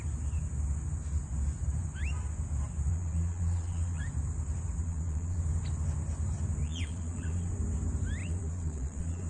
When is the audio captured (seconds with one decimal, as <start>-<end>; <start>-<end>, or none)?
0.0-2.9; 4.0-4.8; 5.4-6.6; 7.5-8.2